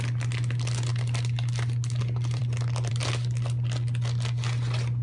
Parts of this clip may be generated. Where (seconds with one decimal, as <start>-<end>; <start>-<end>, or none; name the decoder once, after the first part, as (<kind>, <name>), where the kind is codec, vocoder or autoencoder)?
none